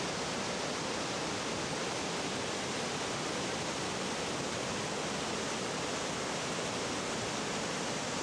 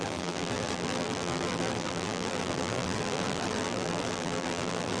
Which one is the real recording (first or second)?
first